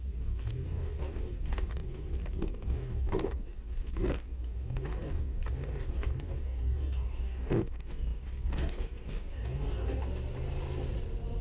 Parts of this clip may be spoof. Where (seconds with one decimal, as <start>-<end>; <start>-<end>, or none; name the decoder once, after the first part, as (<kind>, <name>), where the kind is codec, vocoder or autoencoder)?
0.0-10.0 (codec, DAC)